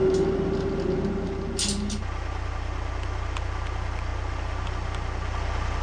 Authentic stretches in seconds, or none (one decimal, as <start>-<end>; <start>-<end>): 0.0-5.8